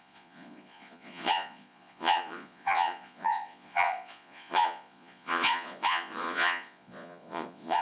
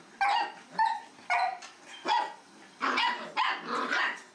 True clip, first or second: second